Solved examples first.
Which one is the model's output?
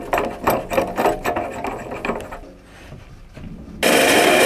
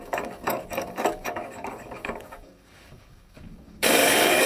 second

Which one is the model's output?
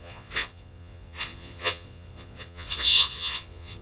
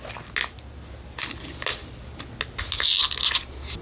first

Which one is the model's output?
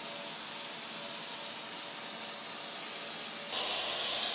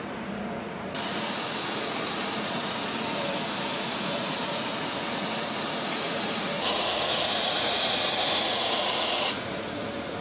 second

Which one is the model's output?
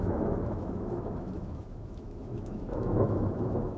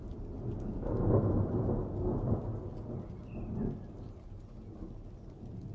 first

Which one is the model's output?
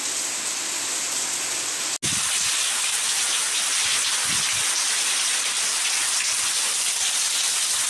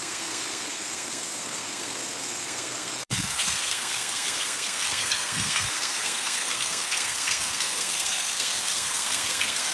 second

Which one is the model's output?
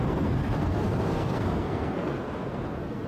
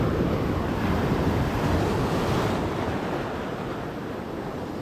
first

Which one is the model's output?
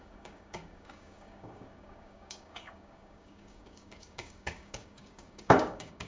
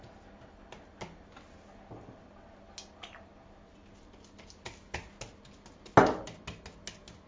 first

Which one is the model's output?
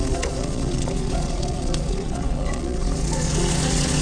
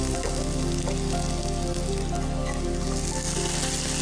first